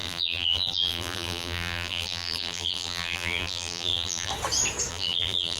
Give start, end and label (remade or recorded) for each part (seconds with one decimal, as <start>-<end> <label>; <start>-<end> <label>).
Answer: 0.0-4.3 remade; 4.3-4.9 recorded; 4.9-5.6 remade

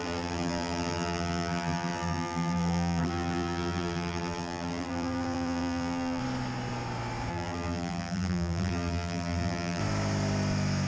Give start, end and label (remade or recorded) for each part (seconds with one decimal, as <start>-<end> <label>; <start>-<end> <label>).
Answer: 0.0-6.2 remade; 6.2-7.3 recorded; 7.3-9.8 remade; 9.8-10.9 recorded

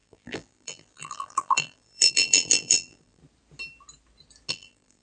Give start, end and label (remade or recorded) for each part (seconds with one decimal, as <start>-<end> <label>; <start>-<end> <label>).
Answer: 0.0-3.2 remade; 3.2-4.5 recorded; 4.5-5.0 remade

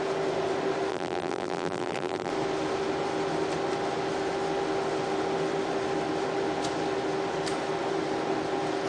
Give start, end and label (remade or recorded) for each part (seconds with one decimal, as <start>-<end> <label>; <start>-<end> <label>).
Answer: 0.0-0.9 recorded; 0.9-2.3 remade; 2.3-8.9 recorded